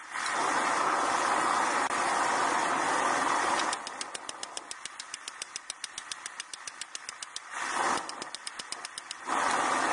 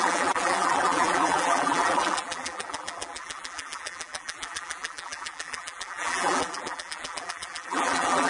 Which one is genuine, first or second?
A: first